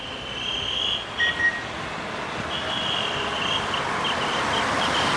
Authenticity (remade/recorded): recorded